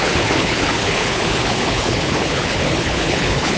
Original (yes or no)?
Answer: no